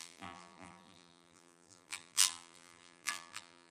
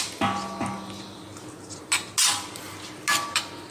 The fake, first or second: first